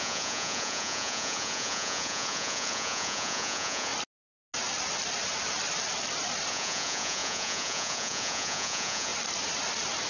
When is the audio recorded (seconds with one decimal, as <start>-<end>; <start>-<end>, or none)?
3.9-6.5; 9.1-10.1